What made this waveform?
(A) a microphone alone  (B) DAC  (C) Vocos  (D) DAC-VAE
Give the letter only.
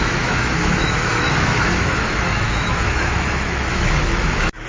D